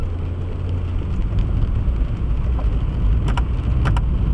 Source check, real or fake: real